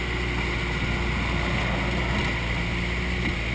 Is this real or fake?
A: real